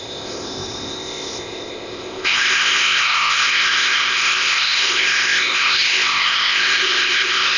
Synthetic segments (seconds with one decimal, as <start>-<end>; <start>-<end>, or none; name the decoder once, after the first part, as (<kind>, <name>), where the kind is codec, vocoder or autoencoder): 0.0-7.6 (codec, ZipCodec)